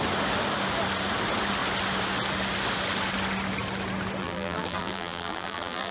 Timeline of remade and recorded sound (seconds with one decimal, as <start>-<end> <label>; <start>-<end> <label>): 0.0-4.2 recorded; 4.2-5.9 remade